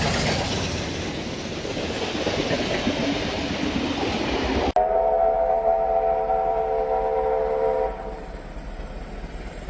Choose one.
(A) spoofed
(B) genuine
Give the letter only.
B